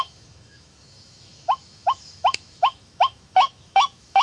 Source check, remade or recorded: remade